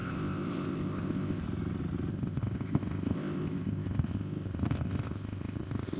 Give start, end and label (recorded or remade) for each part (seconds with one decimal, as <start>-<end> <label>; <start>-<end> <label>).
0.0-1.4 remade; 1.4-2.1 recorded; 2.1-6.0 remade